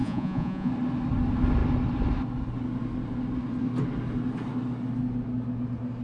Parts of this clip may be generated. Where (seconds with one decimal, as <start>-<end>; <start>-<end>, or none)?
0.0-0.7